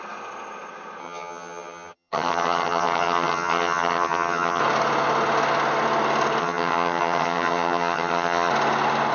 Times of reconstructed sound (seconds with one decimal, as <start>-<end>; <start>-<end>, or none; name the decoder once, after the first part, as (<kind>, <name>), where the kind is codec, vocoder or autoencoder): 1.0-4.6 (vocoder, HiFi-GAN); 6.4-8.5